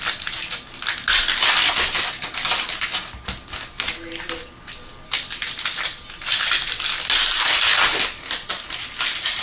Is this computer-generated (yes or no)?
no